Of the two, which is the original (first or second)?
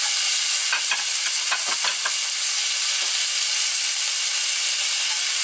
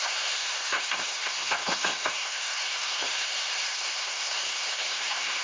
first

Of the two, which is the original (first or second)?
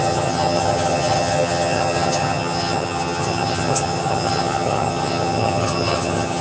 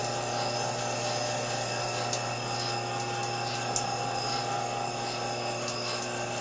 second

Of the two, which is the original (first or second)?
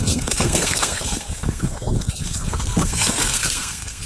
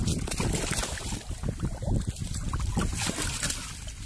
second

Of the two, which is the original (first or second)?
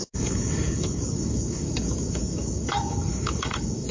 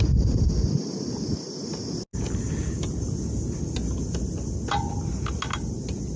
second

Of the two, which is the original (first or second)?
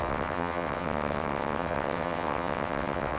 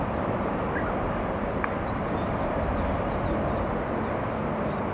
second